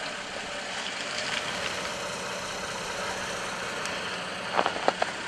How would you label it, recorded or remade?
recorded